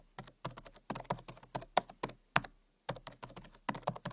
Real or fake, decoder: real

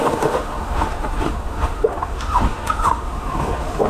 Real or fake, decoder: fake, autoencoder, DAC-VAE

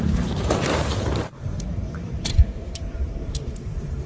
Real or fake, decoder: fake, vocoder, BigVGAN v2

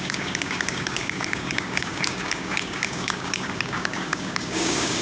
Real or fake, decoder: fake, codec, DAC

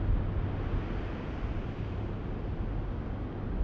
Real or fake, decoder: real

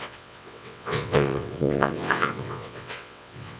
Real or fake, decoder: fake, vocoder, WaveNeXt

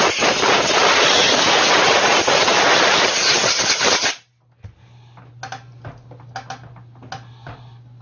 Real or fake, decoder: real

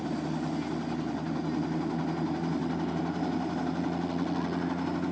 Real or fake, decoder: real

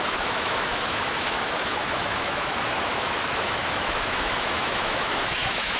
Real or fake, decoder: fake, autoencoder, DAC-VAE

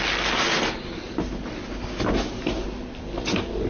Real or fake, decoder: real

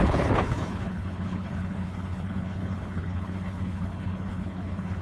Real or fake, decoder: fake, codec, HILCodec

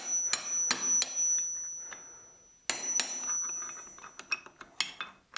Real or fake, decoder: real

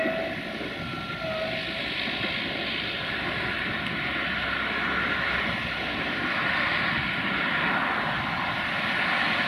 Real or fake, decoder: real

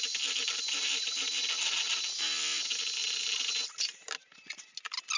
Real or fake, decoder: real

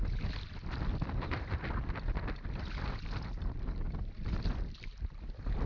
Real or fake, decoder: real